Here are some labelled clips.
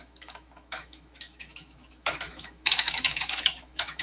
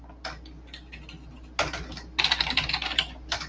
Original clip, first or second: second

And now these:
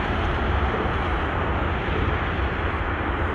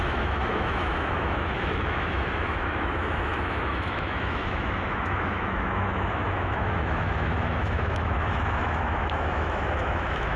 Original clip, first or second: first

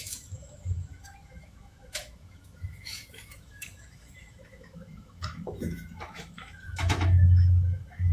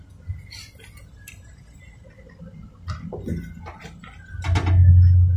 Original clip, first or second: second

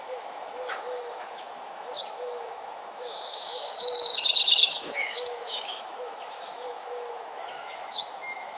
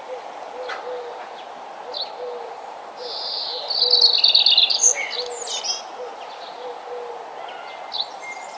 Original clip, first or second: second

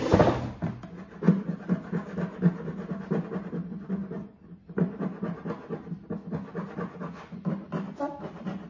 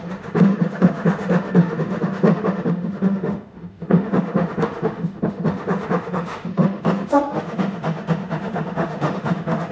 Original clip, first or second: first